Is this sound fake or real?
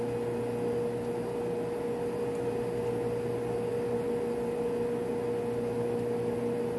real